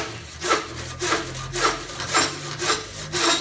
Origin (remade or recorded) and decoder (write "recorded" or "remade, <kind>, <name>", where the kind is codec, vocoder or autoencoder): recorded